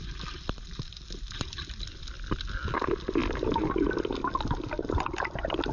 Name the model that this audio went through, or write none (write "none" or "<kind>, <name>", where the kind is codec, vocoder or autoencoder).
none